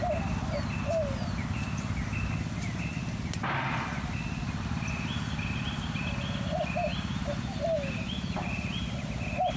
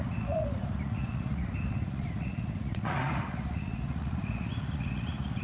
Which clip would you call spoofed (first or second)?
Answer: second